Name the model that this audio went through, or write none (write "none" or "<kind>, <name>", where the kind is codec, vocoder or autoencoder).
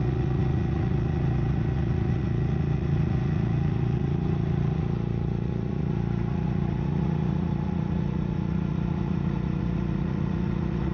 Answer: vocoder, Vocos